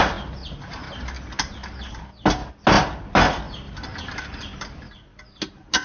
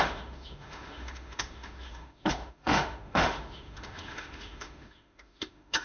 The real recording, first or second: first